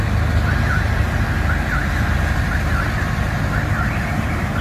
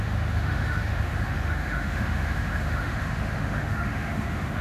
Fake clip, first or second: second